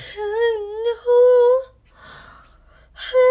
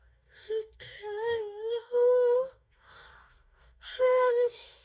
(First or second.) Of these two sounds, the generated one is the second